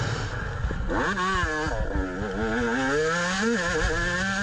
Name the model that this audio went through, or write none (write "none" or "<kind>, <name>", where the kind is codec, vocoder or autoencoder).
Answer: none